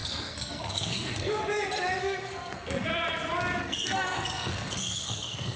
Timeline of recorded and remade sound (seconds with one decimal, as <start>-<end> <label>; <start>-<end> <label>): 0.0-1.4 remade; 1.4-2.0 recorded; 2.0-2.9 remade; 2.9-3.6 recorded; 3.6-5.6 remade